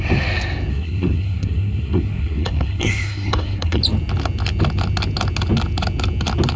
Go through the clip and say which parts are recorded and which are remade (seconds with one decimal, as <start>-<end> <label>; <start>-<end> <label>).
0.0-0.7 recorded; 0.7-3.8 remade; 3.8-6.6 recorded